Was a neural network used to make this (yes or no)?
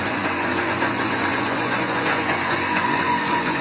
yes